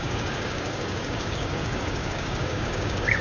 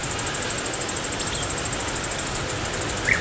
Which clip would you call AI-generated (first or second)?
first